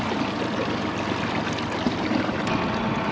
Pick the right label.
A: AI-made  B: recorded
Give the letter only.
B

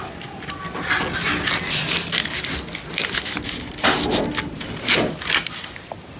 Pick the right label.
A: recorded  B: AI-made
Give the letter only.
A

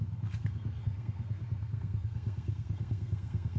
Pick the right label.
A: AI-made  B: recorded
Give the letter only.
A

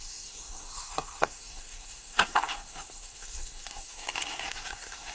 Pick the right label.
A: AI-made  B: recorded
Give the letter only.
A